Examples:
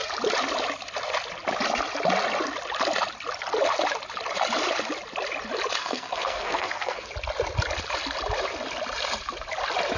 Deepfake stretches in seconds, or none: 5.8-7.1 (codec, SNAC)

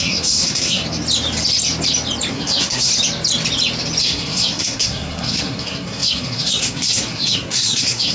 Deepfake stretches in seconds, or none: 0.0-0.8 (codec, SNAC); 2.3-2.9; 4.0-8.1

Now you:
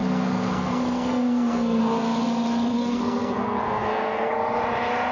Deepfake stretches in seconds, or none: 0.0-1.8 (codec, SNAC); 2.7-4.3

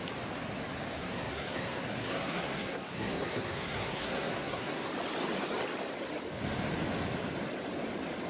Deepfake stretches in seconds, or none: 1.0-4.9 (codec, SNAC)

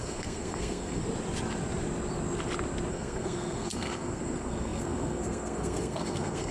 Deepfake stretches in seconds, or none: 0.0-1.0 (codec, SNAC); 2.9-6.5

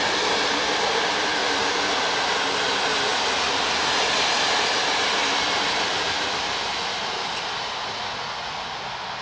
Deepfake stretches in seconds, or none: none

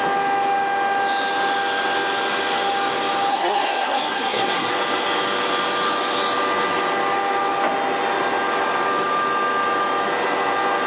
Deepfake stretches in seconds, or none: 3.3-4.7 (codec, SNAC)

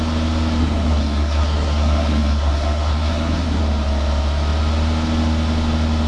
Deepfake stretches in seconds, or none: 0.6-3.6 (codec, SNAC)